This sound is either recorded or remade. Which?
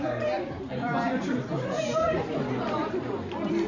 recorded